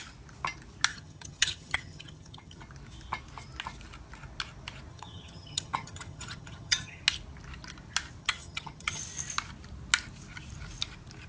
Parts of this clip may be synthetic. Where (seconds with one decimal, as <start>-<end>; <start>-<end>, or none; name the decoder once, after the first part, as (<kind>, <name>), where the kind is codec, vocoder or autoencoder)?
0.9-2.6 (vocoder, HiFi-GAN); 4.9-7.0; 8.2-9.0